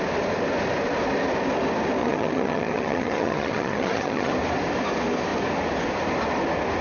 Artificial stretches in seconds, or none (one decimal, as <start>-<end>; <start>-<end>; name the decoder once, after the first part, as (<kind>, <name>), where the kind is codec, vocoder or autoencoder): 2.0-4.3 (vocoder, HiFi-GAN)